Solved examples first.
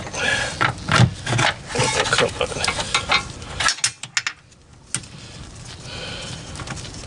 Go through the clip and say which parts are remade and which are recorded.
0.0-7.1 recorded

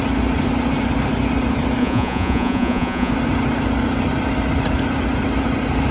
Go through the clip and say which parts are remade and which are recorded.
0.0-1.8 recorded; 1.8-3.1 remade; 3.1-5.9 recorded

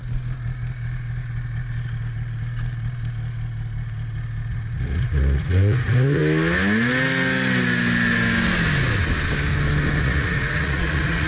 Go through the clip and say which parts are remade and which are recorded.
0.0-4.5 recorded; 4.5-6.2 remade; 6.2-10.0 recorded; 10.0-11.3 remade

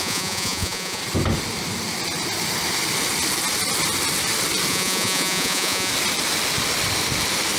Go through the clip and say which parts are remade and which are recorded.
0.0-1.0 remade; 1.0-4.7 recorded; 4.7-5.9 remade; 5.9-7.6 recorded

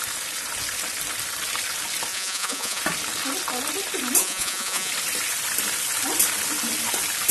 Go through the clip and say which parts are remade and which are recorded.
0.0-2.1 recorded; 2.1-2.8 remade; 2.8-4.2 recorded; 4.2-4.9 remade; 4.9-7.3 recorded

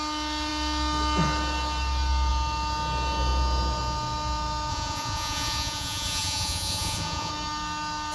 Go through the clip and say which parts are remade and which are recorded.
0.0-4.7 recorded; 4.7-7.3 remade; 7.3-8.1 recorded